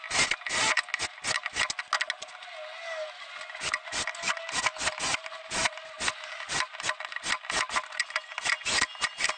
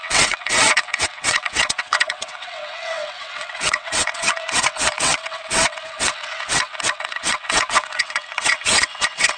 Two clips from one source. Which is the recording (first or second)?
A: first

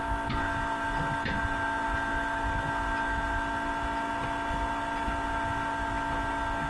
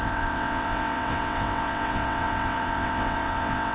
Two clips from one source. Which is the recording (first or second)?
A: first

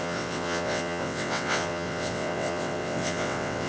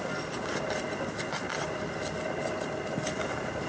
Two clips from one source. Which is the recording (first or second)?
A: second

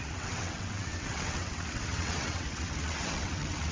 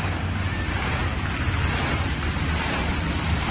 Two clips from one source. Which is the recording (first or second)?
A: second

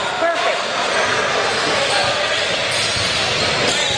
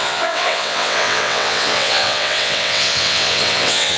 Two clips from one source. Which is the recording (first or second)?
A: first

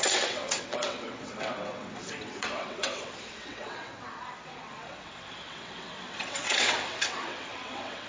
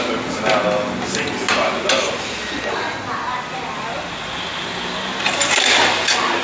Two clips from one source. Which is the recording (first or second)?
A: second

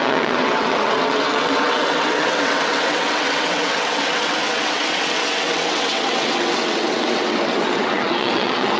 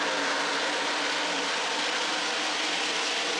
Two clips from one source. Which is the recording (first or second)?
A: second